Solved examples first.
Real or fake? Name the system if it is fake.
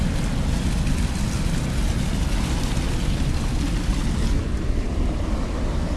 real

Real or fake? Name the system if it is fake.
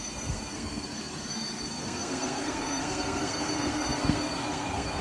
fake, codec, SNAC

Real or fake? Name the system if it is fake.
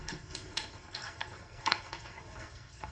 fake, codec, SNAC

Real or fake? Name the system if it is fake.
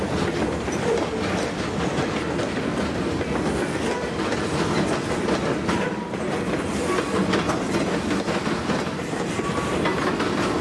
real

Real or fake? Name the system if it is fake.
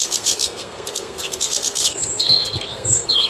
fake, codec, SNAC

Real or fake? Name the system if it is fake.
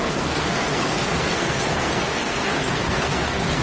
fake, codec, SNAC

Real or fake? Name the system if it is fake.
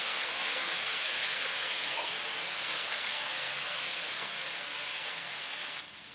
fake, codec, SNAC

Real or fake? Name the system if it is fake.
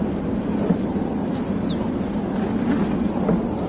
real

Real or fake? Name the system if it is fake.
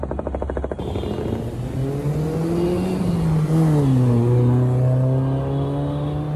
real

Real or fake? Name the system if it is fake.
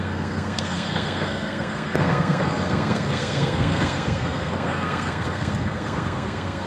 fake, codec, SNAC